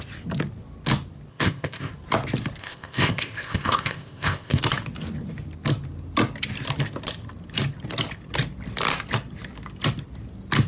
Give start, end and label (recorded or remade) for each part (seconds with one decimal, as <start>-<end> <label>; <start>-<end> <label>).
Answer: 0.0-1.3 recorded; 1.3-1.9 remade; 1.9-2.6 recorded; 2.6-4.6 remade; 4.6-10.7 recorded